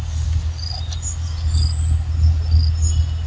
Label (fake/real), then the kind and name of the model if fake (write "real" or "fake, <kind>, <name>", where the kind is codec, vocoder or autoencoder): real